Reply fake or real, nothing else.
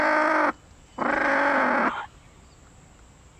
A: real